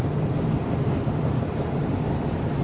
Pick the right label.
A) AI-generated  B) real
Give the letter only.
B